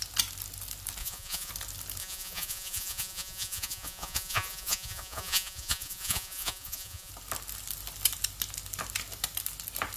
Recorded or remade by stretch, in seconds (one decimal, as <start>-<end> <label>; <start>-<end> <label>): 0.0-1.0 recorded; 1.0-1.5 remade; 1.5-2.0 recorded; 2.0-7.1 remade; 7.1-10.0 recorded